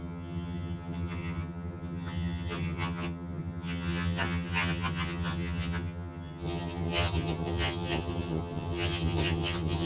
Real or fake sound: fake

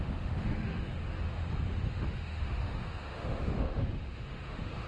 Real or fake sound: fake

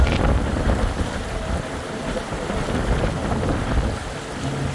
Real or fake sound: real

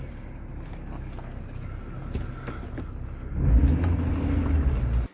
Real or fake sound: real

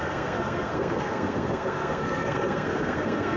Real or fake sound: fake